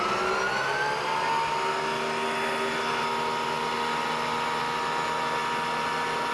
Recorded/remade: recorded